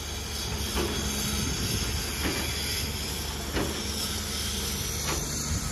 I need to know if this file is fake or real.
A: real